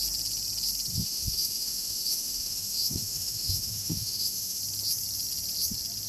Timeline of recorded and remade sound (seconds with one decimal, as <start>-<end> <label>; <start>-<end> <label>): 0.0-0.9 recorded; 0.9-4.6 remade; 4.6-6.1 recorded